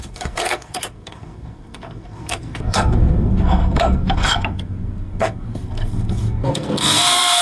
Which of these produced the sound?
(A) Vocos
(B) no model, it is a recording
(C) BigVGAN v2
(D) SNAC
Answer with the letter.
D